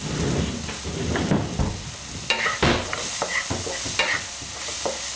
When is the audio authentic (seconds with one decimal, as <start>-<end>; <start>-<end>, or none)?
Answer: 0.0-5.2